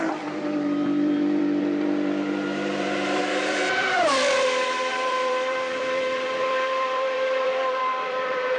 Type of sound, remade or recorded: remade